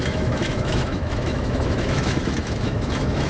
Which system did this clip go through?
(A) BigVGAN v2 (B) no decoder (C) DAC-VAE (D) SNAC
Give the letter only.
C